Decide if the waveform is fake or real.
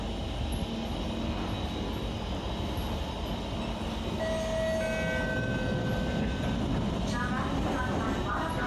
real